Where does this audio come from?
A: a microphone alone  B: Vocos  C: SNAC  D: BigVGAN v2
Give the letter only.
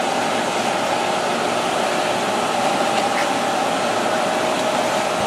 A